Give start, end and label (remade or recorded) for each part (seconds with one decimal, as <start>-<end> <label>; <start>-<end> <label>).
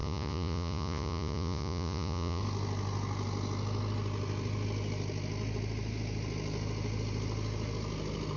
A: 0.0-2.4 remade; 2.4-8.4 recorded